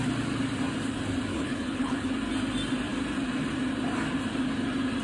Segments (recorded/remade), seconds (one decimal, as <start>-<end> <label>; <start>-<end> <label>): 0.0-1.3 recorded; 1.3-2.1 remade; 2.1-5.0 recorded